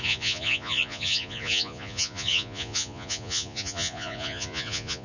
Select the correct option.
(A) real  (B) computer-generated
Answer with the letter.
B